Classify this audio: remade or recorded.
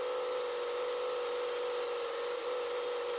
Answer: recorded